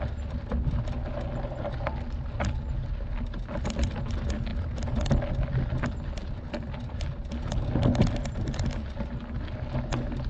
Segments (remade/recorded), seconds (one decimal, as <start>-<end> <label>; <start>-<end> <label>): 0.0-10.3 recorded